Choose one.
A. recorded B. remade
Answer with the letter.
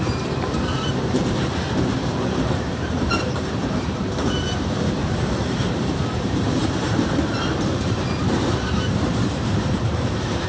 B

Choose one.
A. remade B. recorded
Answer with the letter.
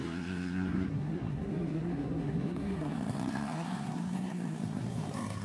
A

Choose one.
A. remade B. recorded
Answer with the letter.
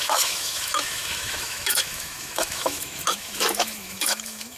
A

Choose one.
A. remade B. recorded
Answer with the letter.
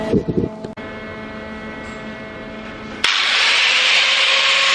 B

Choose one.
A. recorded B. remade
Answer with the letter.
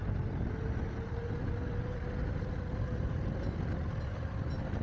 A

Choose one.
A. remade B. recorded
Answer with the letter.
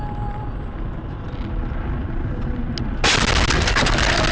B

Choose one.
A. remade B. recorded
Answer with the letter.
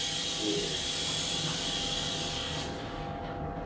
B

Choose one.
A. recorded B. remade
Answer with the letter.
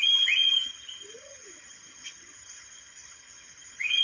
B